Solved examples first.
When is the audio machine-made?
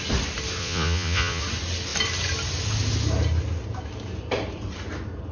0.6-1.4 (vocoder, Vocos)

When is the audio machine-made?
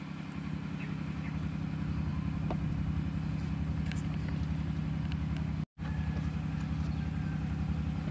none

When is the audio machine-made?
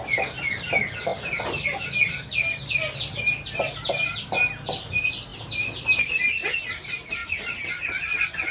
none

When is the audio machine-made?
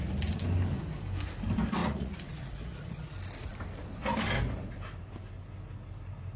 1.8-3.1 (vocoder, Vocos)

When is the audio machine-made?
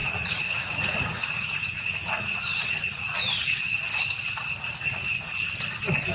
0.0-3.7 (vocoder, Vocos)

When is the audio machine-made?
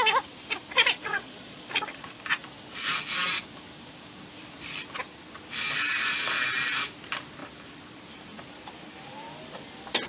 1.0-2.1 (vocoder, Vocos)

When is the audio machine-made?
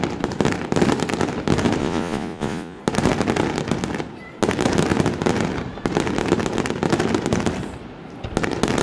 1.8-2.8 (vocoder, Vocos)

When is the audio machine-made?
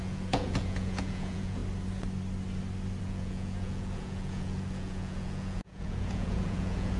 0.0-1.6 (vocoder, Vocos); 3.0-7.0